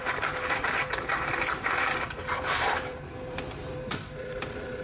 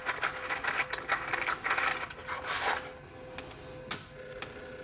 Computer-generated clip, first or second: first